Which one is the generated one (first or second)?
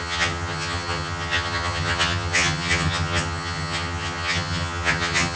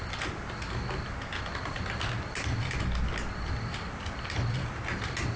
first